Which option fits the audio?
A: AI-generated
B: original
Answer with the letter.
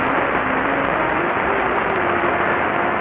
B